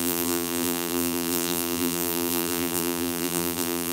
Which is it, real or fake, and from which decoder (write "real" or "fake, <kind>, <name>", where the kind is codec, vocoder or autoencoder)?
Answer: fake, vocoder, BigVGAN v2